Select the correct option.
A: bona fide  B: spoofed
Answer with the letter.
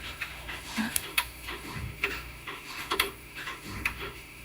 B